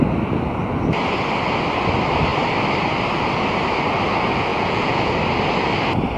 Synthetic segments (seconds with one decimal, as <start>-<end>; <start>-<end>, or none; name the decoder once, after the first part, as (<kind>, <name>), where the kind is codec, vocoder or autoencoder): 4.5-5.1 (vocoder, Vocos)